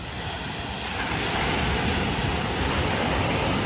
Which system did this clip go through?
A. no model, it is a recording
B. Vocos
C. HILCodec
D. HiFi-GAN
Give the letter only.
A